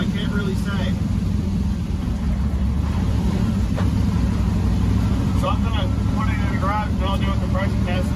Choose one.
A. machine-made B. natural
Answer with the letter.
A